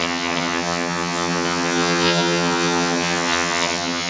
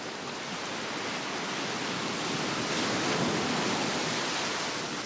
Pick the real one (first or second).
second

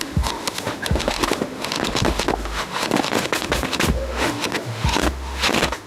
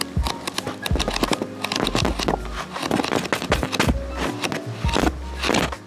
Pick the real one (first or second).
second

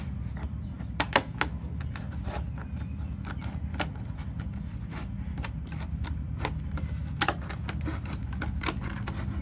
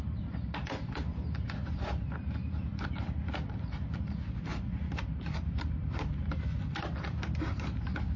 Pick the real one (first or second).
first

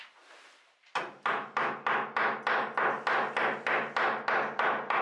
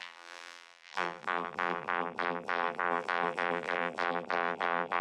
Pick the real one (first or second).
first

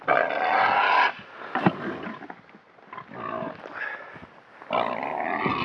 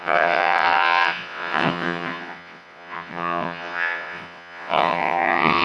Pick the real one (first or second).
first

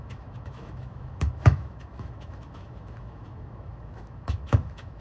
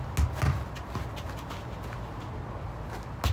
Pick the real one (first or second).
second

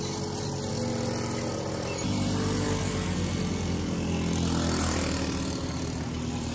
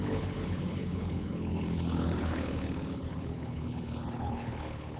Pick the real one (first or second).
first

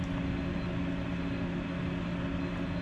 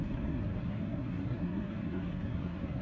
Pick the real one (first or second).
first